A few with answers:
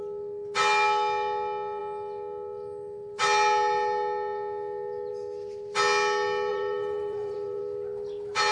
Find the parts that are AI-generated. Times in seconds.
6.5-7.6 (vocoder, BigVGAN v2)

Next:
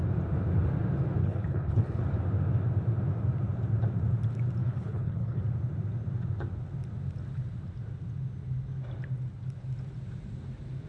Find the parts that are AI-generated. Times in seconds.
1.2-2.0 (codec, HILCodec); 4.6-5.4

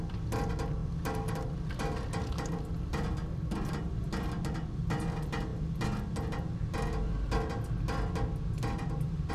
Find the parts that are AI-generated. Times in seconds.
none

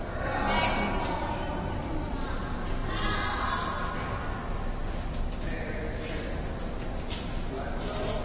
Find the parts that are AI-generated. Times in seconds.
none

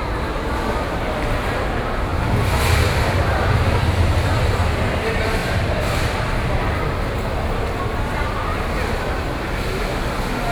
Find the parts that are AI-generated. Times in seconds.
5.4-7.8 (vocoder, BigVGAN v2)

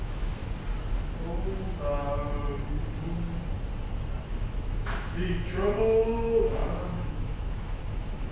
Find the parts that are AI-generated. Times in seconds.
0.0-0.4 (autoencoder, DAC-VAE); 4.4-8.3